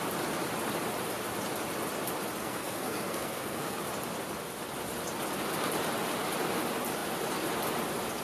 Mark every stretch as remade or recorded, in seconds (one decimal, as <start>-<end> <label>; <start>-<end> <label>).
0.0-2.4 recorded; 2.4-3.8 remade; 3.8-8.2 recorded

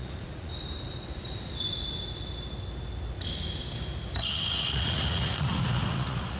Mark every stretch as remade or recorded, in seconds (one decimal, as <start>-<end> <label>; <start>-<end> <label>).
0.0-0.5 remade; 0.5-4.2 recorded; 4.2-6.4 remade

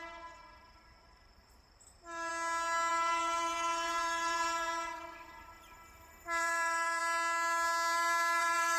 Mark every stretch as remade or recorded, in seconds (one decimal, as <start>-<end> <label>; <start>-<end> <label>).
0.0-2.3 remade; 2.3-2.9 recorded; 2.9-7.0 remade; 7.0-8.4 recorded; 8.4-8.8 remade